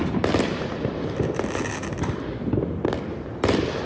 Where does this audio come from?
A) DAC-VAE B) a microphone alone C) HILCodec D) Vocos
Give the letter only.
B